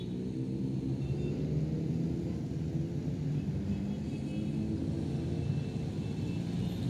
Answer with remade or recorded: recorded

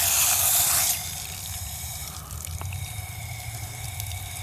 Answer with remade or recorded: remade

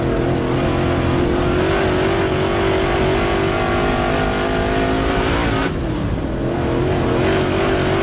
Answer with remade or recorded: recorded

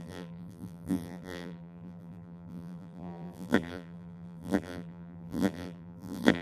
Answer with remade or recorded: remade